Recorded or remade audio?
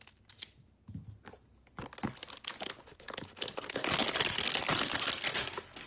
recorded